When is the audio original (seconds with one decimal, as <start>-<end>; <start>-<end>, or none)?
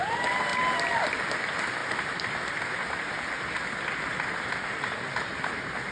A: 0.0-5.9